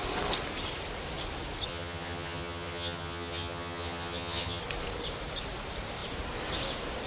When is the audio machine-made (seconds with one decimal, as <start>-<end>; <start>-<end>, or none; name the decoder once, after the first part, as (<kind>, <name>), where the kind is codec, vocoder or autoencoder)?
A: 1.7-4.6 (vocoder, HiFi-GAN)